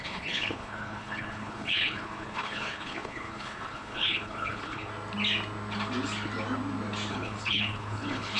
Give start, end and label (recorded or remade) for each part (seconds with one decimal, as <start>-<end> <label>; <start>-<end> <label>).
0.0-4.9 remade; 4.9-7.1 recorded; 7.1-8.4 remade